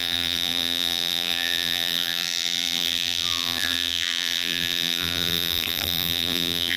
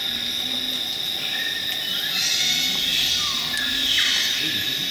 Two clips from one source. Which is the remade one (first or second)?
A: first